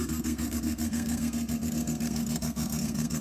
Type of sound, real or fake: fake